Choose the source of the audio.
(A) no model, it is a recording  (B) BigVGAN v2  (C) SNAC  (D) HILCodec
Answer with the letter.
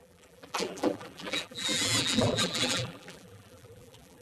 B